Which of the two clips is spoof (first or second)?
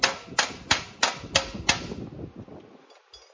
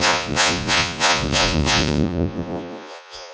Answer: second